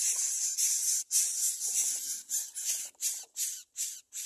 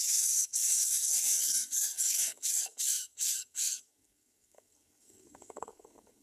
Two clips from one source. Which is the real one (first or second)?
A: first